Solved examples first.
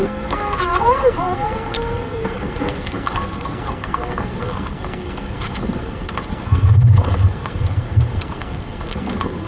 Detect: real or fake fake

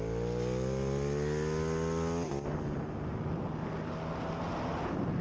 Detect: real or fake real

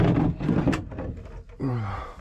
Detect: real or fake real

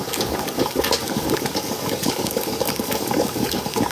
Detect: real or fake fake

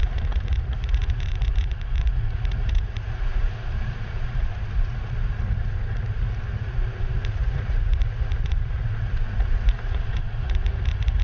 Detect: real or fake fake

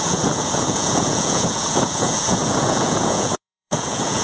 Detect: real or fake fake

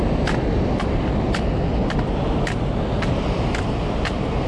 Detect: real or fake real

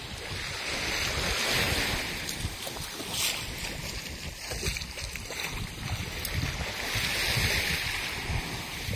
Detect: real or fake real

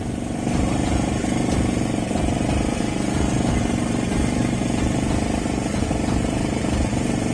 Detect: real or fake fake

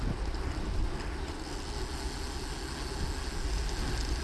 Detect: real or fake real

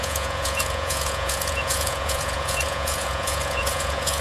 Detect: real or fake fake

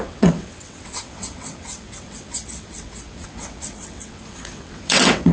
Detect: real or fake fake